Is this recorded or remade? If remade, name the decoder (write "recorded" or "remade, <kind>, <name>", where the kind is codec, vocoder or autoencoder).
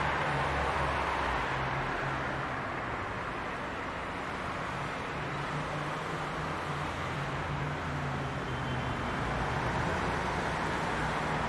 recorded